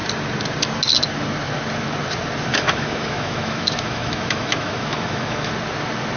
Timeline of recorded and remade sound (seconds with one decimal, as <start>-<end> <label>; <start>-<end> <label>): 0.0-2.5 recorded; 2.5-5.5 remade; 5.5-6.2 recorded